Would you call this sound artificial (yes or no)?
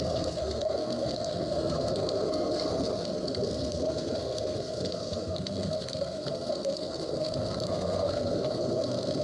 yes